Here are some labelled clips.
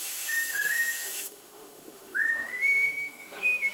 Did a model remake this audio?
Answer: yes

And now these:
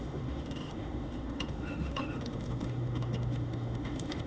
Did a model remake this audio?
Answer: yes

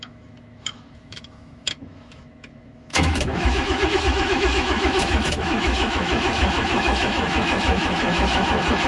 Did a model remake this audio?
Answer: yes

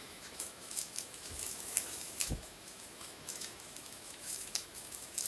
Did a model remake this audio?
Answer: yes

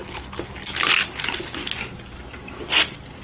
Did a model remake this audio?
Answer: no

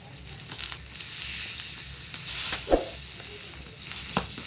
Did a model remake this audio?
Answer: no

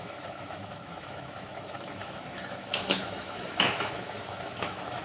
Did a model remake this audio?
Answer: yes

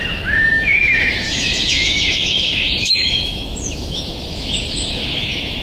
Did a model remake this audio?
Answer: yes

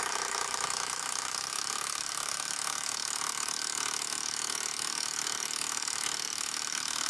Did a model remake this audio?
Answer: yes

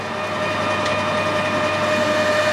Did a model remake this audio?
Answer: no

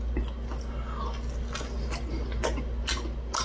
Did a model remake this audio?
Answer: no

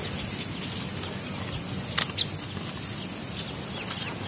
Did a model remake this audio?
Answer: no